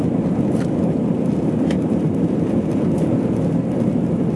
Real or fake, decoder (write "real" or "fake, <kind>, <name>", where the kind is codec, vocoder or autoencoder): fake, vocoder, BigVGAN v2